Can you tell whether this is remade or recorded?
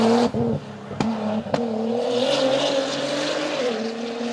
recorded